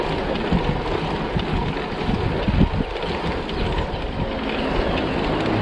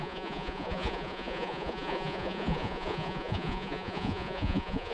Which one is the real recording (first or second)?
first